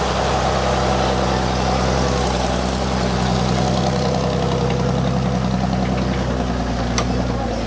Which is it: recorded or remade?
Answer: recorded